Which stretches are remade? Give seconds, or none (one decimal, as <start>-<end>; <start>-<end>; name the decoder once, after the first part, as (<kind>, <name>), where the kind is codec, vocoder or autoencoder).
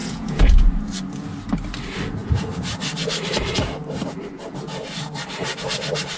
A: 0.0-0.8 (vocoder, Vocos)